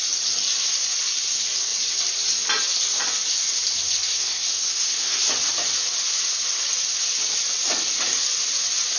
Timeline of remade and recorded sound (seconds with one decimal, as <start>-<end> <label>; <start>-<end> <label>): 0.0-4.1 recorded; 4.1-5.3 remade; 5.3-9.0 recorded